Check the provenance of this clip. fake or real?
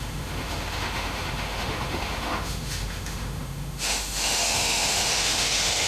fake